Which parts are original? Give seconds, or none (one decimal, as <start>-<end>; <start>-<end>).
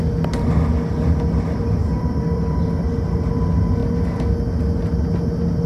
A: 0.0-1.8; 2.8-5.7